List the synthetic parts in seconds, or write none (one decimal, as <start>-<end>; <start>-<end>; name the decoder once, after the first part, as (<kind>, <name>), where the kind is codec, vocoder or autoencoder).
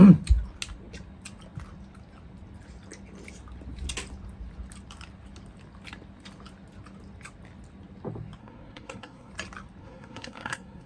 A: 8.4-9.3 (codec, SNAC); 9.8-10.9